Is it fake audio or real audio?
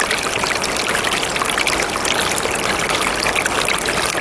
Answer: real